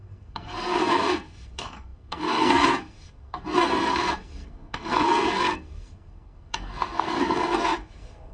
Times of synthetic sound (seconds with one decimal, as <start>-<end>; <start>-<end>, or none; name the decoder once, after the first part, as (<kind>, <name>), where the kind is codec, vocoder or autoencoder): 0.0-8.3 (codec, SNAC)